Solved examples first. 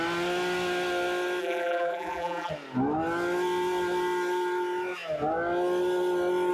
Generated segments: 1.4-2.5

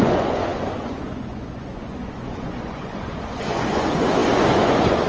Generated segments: 0.0-5.1

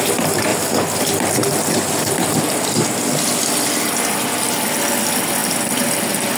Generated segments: 0.5-2.4; 5.4-6.0

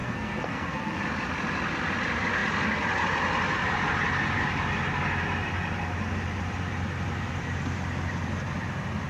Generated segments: 0.0-1.0

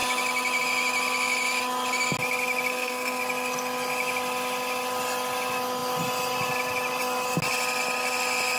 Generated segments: 2.7-3.2